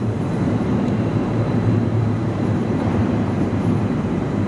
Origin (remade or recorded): remade